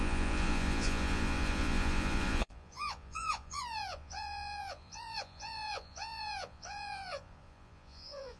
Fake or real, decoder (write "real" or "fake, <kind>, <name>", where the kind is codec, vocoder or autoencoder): fake, vocoder, Vocos